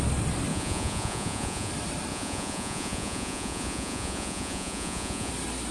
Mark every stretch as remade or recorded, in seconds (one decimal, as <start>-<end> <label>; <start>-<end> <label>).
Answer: 0.0-0.5 recorded; 0.5-1.7 remade; 1.7-2.1 recorded; 2.1-5.3 remade; 5.3-5.7 recorded